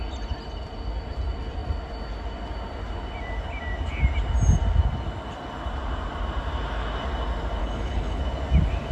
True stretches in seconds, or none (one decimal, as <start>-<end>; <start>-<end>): 0.0-7.6; 8.2-8.9